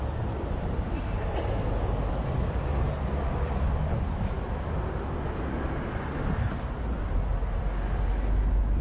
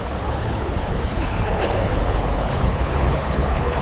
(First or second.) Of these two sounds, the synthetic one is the second